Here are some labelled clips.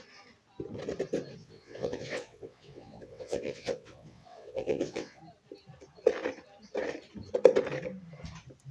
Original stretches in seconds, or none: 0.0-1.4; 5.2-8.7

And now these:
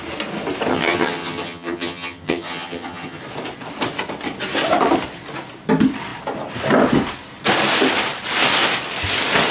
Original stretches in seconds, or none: 0.0-0.7; 3.2-9.5

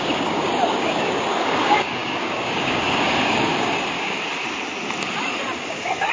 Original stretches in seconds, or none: 4.3-5.6

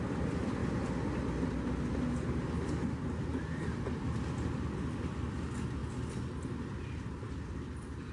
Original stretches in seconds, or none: 0.6-3.2; 5.8-6.8